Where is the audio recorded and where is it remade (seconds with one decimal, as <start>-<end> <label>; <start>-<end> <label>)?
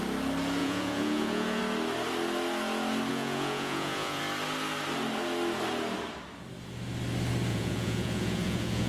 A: 0.0-0.6 recorded; 0.6-1.6 remade; 1.6-3.1 recorded; 3.1-4.2 remade; 4.2-7.5 recorded; 7.5-8.9 remade